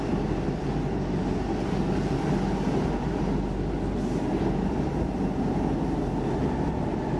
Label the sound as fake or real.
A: real